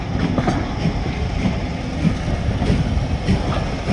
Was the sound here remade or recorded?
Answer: recorded